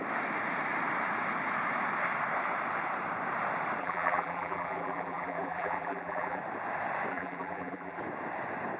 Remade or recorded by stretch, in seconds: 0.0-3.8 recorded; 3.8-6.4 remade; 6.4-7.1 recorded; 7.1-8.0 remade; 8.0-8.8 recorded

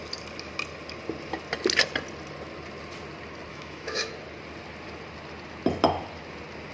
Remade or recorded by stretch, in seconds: 0.0-3.5 recorded; 3.5-4.1 remade; 4.1-6.7 recorded

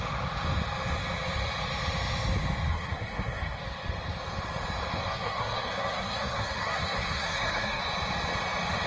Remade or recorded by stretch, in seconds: 0.0-2.7 recorded; 2.7-3.6 remade; 3.6-5.1 recorded; 5.1-7.8 remade; 7.8-8.9 recorded

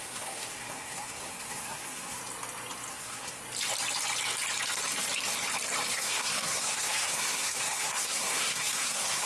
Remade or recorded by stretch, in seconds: 0.0-2.2 remade; 2.2-2.9 recorded; 2.9-3.4 remade; 3.4-5.9 recorded; 5.9-9.3 remade

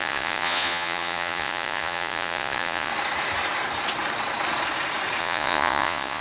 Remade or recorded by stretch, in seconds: 0.0-2.9 remade; 2.9-5.2 recorded; 5.2-6.2 remade

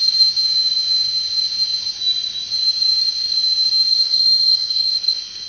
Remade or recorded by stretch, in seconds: 0.0-3.9 recorded; 3.9-5.5 remade

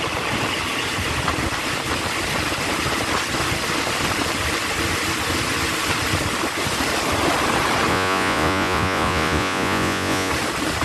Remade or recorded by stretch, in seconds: 0.0-7.9 recorded; 7.9-10.3 remade; 10.3-10.8 recorded